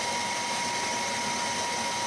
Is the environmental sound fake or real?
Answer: real